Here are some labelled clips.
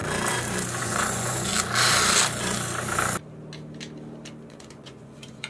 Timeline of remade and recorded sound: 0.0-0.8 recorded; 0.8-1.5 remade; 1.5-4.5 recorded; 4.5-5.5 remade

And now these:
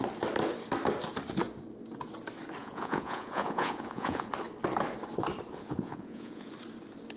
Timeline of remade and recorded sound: 0.0-2.6 recorded; 2.6-4.3 remade; 4.3-5.6 recorded; 5.6-6.5 remade; 6.5-7.2 recorded

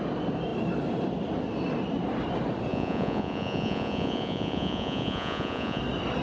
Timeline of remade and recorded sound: 0.0-2.7 recorded; 2.7-5.8 remade; 5.8-6.2 recorded

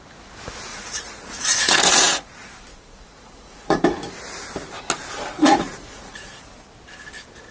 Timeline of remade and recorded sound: 0.0-0.7 recorded; 0.7-2.3 remade; 2.3-2.7 recorded; 2.7-3.8 remade; 3.8-5.4 recorded; 5.4-6.3 remade; 6.3-7.5 recorded

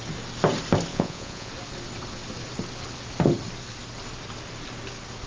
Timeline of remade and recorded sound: 0.0-0.9 recorded; 0.9-1.5 remade; 1.5-5.3 recorded

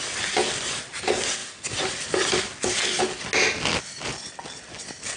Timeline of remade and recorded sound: 0.0-5.2 recorded

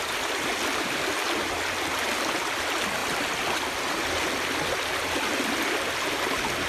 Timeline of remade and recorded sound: 0.0-6.7 recorded

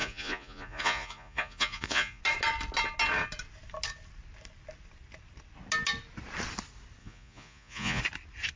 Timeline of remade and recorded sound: 0.0-2.2 remade; 2.2-7.0 recorded; 7.0-8.0 remade; 8.0-8.6 recorded